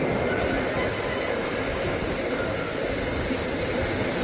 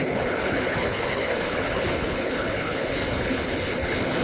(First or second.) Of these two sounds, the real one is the first